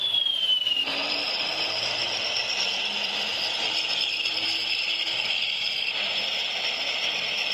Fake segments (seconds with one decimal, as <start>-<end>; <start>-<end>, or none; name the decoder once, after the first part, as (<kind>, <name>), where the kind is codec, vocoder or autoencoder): 0.0-7.5 (vocoder, BigVGAN v2)